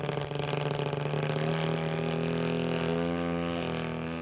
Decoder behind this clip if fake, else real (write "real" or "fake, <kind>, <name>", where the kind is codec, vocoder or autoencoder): real